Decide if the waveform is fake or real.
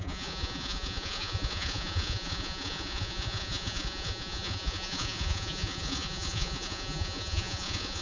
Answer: fake